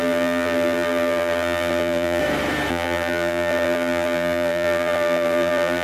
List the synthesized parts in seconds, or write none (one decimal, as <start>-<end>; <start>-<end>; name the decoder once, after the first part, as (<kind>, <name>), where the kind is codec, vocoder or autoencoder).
0.0-2.2 (vocoder, BigVGAN v2); 2.7-5.8